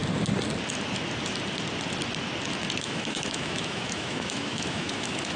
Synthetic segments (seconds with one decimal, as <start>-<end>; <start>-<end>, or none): 2.8-5.4